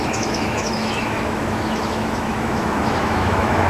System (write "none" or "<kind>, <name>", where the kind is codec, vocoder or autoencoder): autoencoder, DAC-VAE